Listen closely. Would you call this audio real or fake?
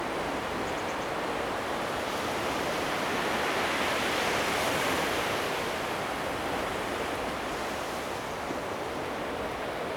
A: real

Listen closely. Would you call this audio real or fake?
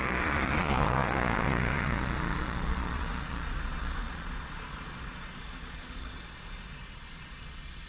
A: fake